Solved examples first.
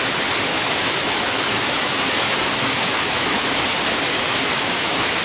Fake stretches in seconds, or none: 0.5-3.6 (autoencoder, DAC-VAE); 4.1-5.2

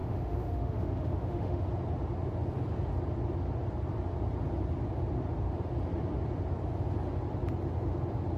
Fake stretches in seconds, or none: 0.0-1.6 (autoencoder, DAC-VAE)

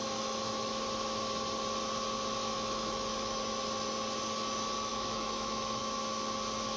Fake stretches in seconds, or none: 0.0-0.7 (autoencoder, DAC-VAE); 2.4-3.4; 4.9-5.8

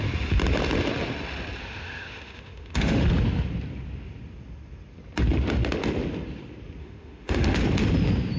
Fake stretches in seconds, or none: 1.6-3.1 (autoencoder, DAC-VAE); 6.8-7.6

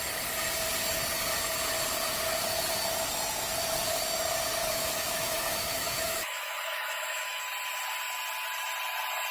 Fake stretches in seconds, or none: 4.6-7.4 (autoencoder, DAC-VAE)

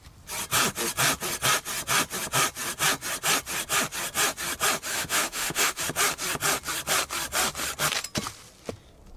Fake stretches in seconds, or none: 4.9-5.8 (autoencoder, DAC-VAE)

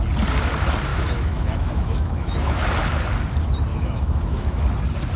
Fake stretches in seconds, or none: 0.9-2.6 (autoencoder, DAC-VAE); 3.7-4.6